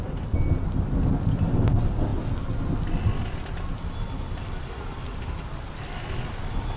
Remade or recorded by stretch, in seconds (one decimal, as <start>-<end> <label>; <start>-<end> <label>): 0.0-6.8 recorded